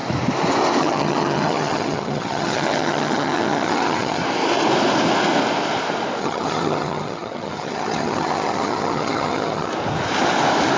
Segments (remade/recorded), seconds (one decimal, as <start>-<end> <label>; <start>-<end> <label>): 0.0-0.8 recorded; 0.8-4.2 remade; 4.2-6.2 recorded; 6.2-9.7 remade; 9.7-10.8 recorded